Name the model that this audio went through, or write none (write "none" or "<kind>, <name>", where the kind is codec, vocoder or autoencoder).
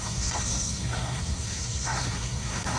codec, SNAC